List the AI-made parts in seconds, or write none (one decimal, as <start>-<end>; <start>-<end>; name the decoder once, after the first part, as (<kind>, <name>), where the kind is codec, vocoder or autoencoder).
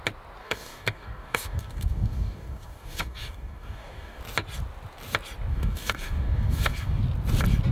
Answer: 0.4-4.2 (codec, DAC); 5.5-7.0